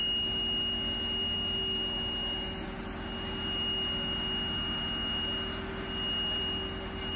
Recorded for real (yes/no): yes